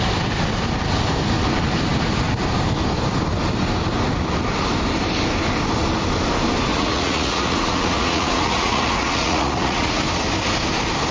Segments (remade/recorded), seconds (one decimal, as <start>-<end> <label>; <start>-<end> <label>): 0.0-6.7 recorded; 6.7-10.0 remade; 10.0-11.1 recorded